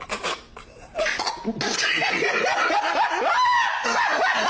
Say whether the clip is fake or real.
real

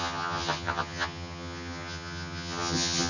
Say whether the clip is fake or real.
fake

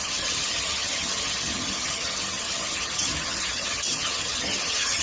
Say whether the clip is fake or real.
fake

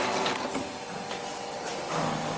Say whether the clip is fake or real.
real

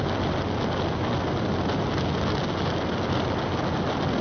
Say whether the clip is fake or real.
real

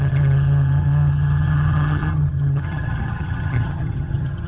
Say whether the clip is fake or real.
fake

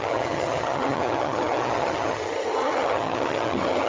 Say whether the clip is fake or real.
fake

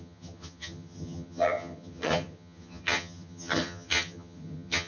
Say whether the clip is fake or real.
fake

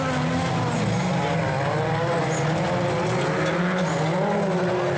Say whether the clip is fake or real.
real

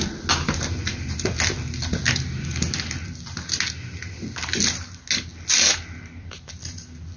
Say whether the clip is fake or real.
real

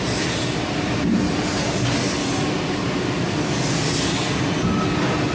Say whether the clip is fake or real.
real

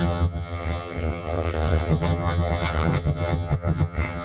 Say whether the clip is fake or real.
fake